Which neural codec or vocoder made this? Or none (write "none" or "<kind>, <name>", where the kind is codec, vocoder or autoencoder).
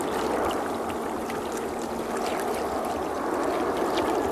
none